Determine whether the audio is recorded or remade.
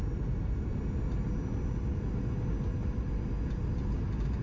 recorded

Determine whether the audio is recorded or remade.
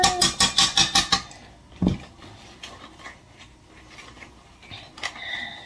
recorded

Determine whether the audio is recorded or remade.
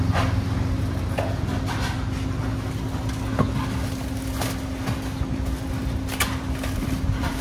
recorded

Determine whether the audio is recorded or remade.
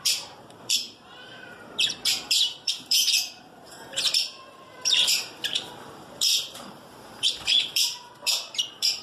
remade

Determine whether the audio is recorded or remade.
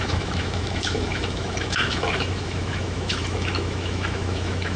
remade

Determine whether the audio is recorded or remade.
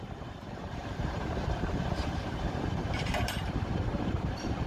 remade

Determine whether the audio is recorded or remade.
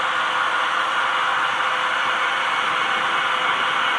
recorded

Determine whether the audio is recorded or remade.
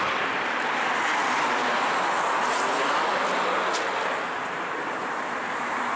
recorded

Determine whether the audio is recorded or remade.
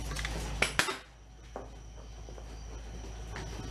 recorded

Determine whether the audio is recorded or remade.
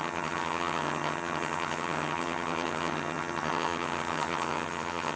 remade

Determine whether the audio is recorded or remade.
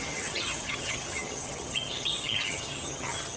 remade